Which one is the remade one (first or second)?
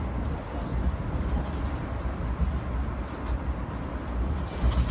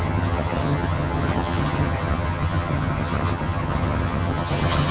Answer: second